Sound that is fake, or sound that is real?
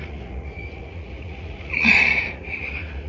fake